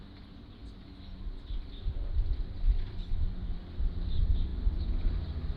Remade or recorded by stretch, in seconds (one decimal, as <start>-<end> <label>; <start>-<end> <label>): 0.0-0.6 remade; 0.6-1.2 recorded; 1.2-4.5 remade; 4.5-5.6 recorded